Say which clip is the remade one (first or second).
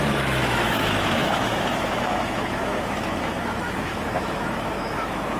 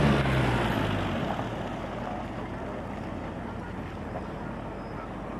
first